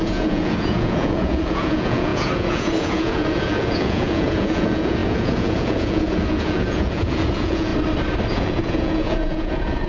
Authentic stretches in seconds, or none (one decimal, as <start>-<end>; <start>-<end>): 7.7-8.3